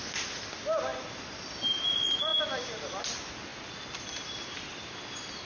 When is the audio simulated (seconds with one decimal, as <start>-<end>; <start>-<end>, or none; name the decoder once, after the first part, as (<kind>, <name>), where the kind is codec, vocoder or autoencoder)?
3.5-5.5 (vocoder, BigVGAN v2)